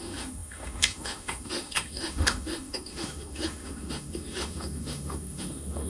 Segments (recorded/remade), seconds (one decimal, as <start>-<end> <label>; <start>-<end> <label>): 0.0-5.9 remade